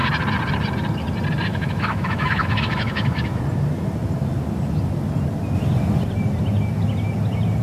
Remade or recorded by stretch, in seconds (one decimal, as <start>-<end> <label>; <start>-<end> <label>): 0.0-1.5 recorded; 1.5-3.4 remade; 3.4-7.6 recorded